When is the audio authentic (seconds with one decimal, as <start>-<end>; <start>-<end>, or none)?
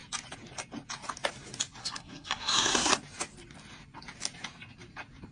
0.0-1.8; 2.9-5.3